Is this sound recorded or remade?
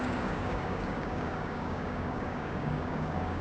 remade